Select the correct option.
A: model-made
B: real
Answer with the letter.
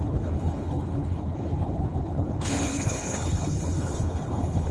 A